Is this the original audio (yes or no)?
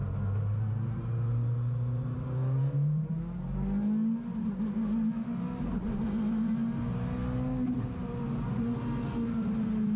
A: yes